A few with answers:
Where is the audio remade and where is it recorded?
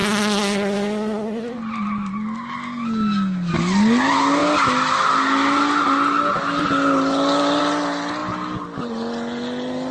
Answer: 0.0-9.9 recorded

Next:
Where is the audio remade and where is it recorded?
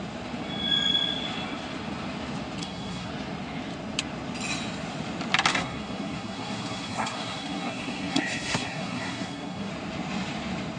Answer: 0.0-2.6 recorded; 2.6-3.1 remade; 3.1-5.5 recorded; 5.5-9.7 remade; 9.7-10.8 recorded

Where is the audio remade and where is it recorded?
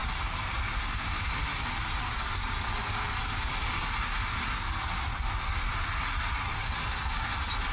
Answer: 0.0-7.7 recorded